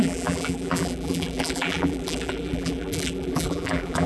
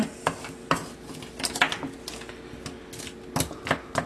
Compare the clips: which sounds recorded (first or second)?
second